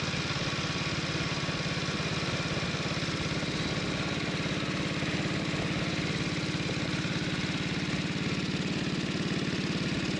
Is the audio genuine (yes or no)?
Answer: yes